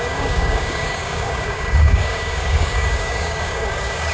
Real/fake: fake